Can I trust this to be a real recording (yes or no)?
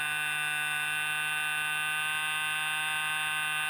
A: yes